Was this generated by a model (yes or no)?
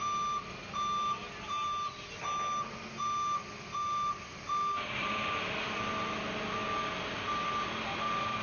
no